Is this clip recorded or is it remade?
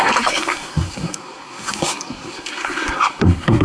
remade